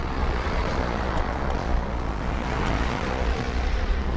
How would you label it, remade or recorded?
remade